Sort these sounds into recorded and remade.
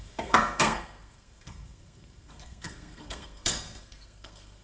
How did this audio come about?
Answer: remade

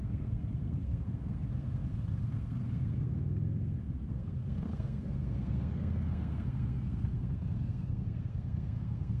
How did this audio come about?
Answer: remade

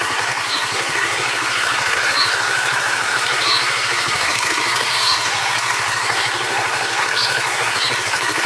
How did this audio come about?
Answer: remade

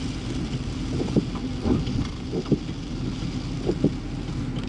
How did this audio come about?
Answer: recorded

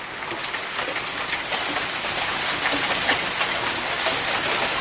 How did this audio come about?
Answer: recorded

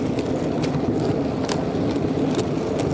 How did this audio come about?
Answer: recorded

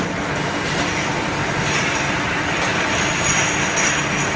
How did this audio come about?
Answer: recorded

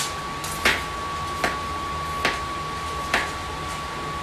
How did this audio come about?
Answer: recorded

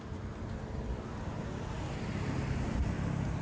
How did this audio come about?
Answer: recorded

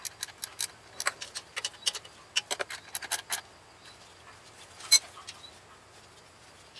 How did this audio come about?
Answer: recorded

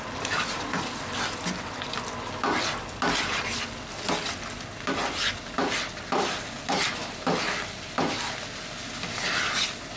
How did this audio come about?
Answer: recorded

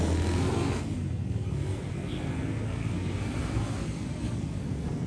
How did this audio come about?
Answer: remade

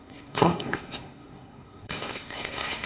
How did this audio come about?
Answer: remade